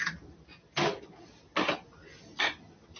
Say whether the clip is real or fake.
real